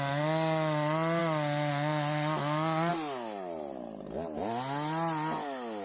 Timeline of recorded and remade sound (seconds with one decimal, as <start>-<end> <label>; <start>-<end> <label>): 0.0-5.8 recorded